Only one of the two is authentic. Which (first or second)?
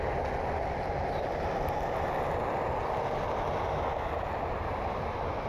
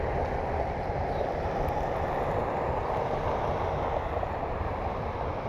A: first